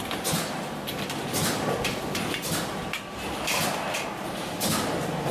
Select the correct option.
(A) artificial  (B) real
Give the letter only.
B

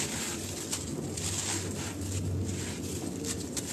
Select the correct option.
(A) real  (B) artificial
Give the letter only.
A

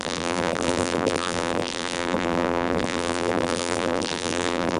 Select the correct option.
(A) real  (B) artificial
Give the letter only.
B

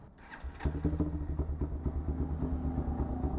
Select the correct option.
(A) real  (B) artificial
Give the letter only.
A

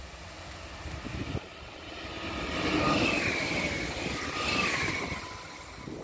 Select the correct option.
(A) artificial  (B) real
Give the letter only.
B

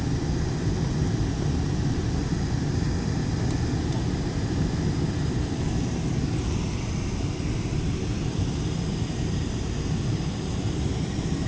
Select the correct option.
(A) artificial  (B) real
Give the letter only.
B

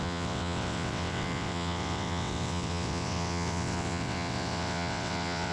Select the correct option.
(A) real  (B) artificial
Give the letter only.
B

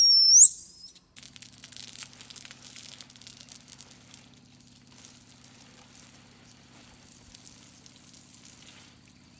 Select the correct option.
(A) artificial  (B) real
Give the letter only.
B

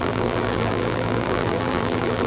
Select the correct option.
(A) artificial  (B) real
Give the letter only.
A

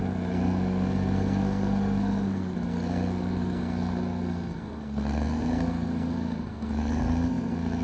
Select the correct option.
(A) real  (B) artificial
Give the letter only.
B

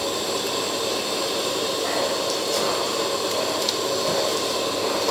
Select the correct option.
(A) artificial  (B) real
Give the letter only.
B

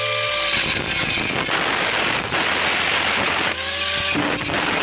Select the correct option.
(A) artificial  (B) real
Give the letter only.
B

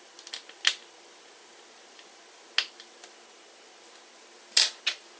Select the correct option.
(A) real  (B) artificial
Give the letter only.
A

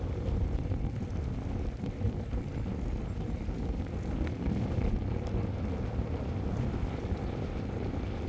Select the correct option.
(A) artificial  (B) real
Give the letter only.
B